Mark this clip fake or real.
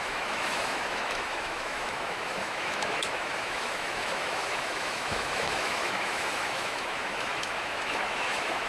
fake